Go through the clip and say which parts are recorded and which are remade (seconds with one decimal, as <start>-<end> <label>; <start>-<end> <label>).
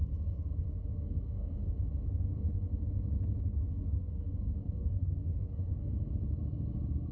0.0-0.9 recorded; 0.9-1.7 remade; 1.7-3.5 recorded; 3.5-6.0 remade; 6.0-7.1 recorded